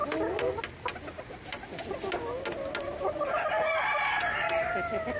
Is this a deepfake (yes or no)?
no